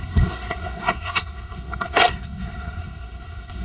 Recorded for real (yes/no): no